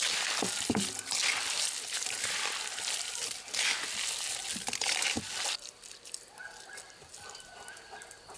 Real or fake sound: real